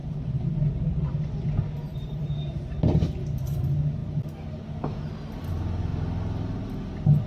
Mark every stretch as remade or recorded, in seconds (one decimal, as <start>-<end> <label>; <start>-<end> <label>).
0.0-1.9 recorded; 1.9-2.7 remade; 2.7-7.3 recorded